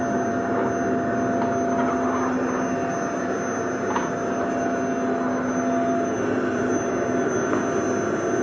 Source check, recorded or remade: recorded